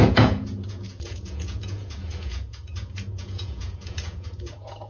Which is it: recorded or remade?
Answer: remade